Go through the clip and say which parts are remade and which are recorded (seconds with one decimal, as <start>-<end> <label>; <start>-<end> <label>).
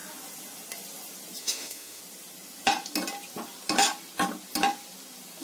0.0-1.4 recorded; 1.4-2.0 remade; 2.0-5.4 recorded